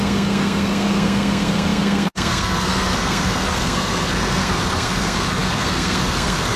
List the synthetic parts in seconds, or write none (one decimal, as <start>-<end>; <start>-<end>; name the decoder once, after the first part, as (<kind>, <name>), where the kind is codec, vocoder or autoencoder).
0.0-6.6 (codec, SNAC)